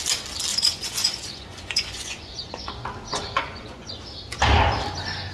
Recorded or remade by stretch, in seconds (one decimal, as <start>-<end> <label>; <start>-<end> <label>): 0.0-0.5 recorded; 0.5-2.7 remade; 2.7-3.1 recorded; 3.1-3.9 remade; 3.9-5.3 recorded